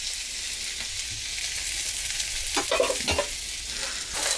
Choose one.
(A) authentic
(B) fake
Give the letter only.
A